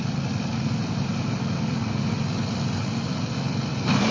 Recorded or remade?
recorded